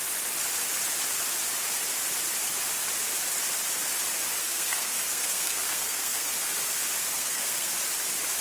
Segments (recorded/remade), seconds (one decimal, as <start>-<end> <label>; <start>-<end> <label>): 0.0-4.4 recorded; 4.4-6.3 remade; 6.3-7.0 recorded; 7.0-7.7 remade; 7.7-8.4 recorded